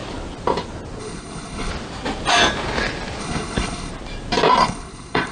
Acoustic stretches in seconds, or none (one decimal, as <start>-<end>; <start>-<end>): 0.0-1.0; 1.7-3.2; 3.9-4.6